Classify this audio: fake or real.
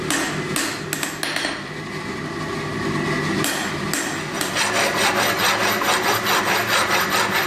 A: real